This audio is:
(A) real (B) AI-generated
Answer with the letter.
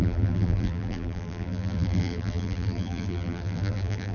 B